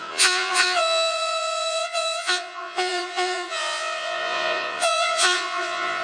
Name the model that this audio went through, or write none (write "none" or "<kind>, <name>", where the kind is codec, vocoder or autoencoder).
vocoder, Vocos